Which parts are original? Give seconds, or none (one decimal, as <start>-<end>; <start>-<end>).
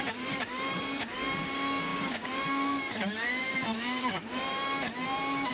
none